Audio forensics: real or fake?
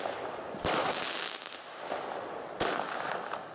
real